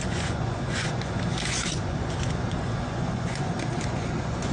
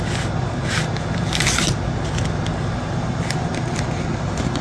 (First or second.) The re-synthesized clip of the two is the first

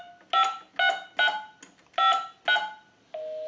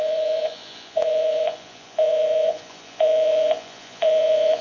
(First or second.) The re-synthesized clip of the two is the second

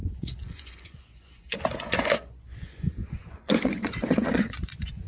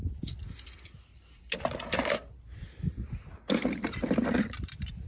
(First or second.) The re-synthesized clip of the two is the first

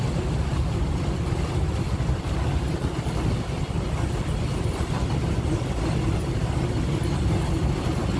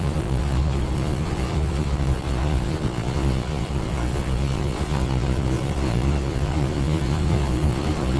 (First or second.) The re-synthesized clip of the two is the second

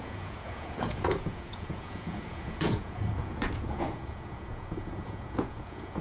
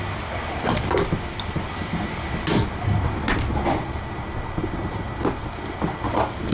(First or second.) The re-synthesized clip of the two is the first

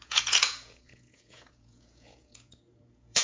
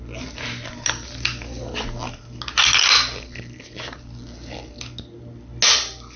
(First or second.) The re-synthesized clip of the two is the first